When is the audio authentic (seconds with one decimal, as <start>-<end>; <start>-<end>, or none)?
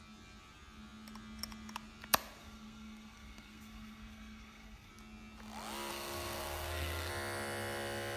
0.0-2.4; 4.9-5.9; 7.1-8.2